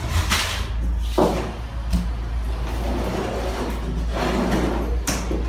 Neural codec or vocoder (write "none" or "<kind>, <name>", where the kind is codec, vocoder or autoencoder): none